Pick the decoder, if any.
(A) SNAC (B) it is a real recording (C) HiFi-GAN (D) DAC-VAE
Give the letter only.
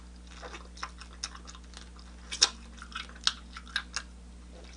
B